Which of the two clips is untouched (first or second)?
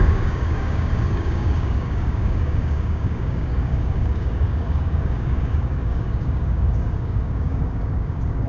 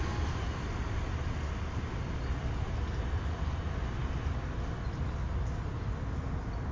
second